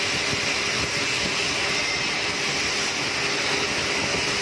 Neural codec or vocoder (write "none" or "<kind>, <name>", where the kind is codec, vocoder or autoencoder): none